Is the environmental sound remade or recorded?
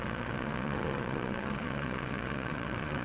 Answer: remade